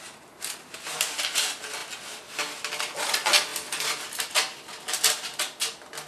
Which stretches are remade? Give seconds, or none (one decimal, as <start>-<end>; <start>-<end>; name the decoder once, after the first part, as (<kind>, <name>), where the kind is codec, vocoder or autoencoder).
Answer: none